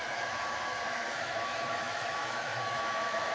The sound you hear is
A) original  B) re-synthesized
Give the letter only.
B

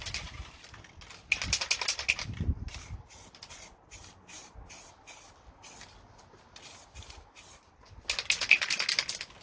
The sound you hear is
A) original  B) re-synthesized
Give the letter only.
A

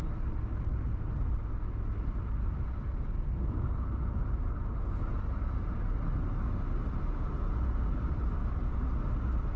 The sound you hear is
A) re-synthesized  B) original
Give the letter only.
B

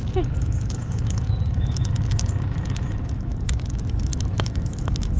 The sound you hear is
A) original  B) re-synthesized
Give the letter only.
B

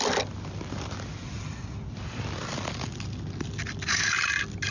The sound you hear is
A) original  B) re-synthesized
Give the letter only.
A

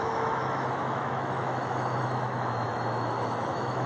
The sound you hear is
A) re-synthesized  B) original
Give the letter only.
A